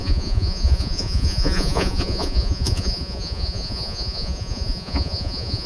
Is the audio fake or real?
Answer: fake